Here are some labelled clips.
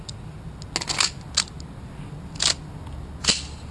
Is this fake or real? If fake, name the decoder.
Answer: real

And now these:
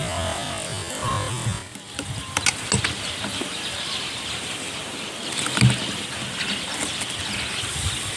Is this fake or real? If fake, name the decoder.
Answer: real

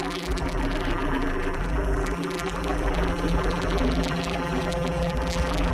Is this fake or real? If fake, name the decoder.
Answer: fake, vocoder, BigVGAN v2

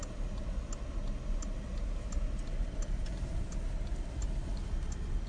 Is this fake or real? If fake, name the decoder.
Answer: real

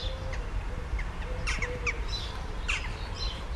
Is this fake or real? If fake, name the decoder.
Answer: fake, vocoder, BigVGAN v2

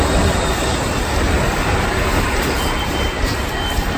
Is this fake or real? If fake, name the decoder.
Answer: fake, vocoder, BigVGAN v2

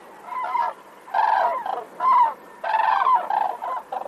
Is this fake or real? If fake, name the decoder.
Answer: fake, vocoder, BigVGAN v2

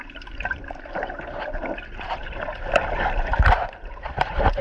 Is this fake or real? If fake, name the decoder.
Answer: fake, vocoder, BigVGAN v2